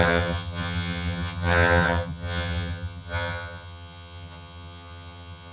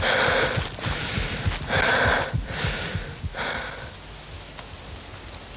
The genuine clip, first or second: second